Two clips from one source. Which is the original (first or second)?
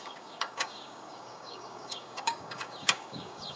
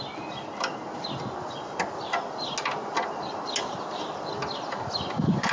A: second